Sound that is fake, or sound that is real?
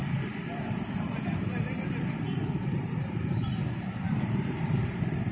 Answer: fake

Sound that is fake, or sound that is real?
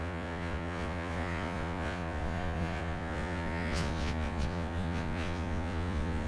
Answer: fake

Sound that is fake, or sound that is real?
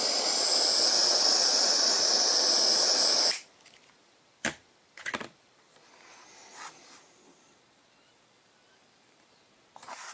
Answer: real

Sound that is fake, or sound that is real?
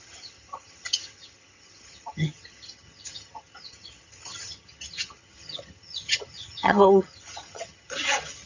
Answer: fake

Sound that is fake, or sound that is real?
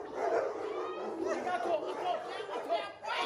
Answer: real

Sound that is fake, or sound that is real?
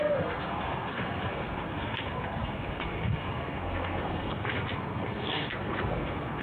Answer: fake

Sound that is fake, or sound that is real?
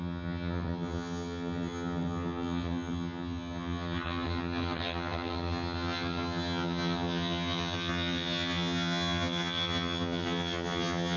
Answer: fake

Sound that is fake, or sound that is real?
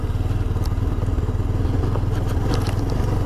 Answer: real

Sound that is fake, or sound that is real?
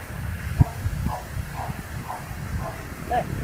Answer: fake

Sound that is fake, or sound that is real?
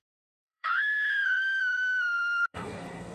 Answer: fake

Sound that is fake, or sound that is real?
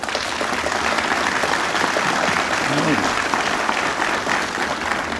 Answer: real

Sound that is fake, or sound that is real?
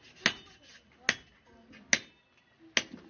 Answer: real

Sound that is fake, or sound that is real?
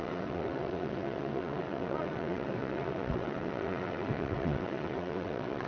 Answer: fake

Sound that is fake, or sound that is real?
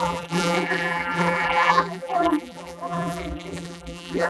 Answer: fake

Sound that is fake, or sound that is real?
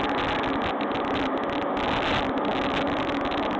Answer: real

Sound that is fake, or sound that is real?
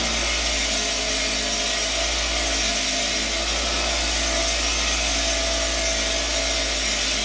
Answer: real